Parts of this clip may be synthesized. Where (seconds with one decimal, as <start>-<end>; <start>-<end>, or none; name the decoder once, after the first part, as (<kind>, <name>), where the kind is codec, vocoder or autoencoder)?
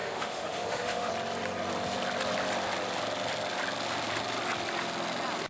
0.0-1.1 (autoencoder, DAC-VAE)